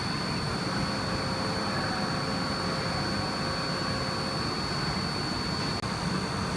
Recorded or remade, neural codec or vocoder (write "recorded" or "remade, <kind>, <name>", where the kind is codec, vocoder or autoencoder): recorded